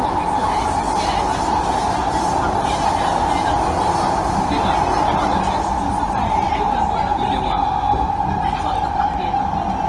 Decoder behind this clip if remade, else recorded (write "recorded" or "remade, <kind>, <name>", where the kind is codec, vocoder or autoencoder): recorded